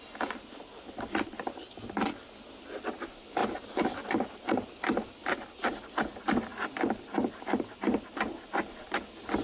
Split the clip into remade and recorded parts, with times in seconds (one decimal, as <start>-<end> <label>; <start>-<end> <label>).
0.0-3.4 recorded; 3.4-4.7 remade; 4.7-9.4 recorded

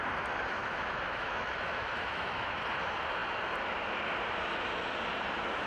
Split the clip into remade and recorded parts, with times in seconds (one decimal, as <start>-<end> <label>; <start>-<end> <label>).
0.0-0.6 recorded; 0.6-2.6 remade; 2.6-5.7 recorded

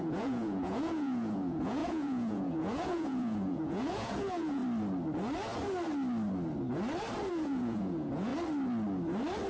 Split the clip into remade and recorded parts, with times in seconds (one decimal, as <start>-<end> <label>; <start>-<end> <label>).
0.0-4.6 remade; 4.6-7.3 recorded; 7.3-8.3 remade; 8.3-9.5 recorded

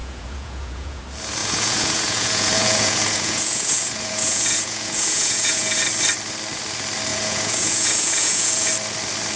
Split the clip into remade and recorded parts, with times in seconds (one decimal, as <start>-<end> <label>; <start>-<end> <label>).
0.0-1.0 remade; 1.0-1.4 recorded; 1.4-5.8 remade; 5.8-7.1 recorded; 7.1-8.7 remade; 8.7-9.4 recorded

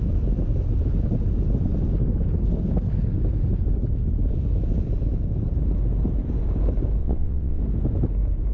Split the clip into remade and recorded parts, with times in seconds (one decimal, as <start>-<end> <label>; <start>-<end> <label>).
0.0-7.0 recorded; 7.0-7.6 remade; 7.6-8.5 recorded